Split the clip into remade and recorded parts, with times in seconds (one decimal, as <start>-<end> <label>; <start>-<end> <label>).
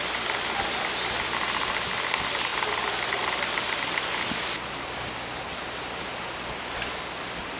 0.0-7.6 recorded